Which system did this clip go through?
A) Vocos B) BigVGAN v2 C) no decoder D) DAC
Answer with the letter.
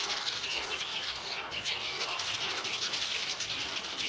D